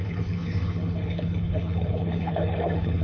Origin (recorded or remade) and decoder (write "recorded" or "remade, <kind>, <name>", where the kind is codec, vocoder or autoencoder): remade, codec, HILCodec